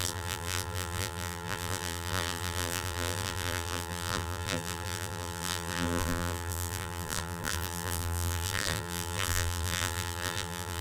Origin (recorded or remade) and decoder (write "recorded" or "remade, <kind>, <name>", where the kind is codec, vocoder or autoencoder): remade, vocoder, BigVGAN v2